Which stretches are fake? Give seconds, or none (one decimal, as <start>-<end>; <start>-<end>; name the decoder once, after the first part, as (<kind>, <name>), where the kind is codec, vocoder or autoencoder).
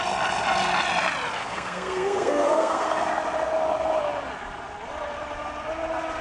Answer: 1.4-3.1 (codec, SNAC)